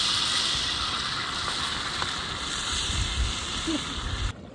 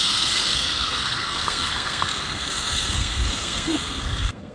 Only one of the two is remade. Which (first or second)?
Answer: second